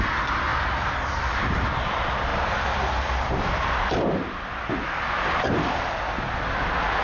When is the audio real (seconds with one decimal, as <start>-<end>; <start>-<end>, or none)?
0.0-7.0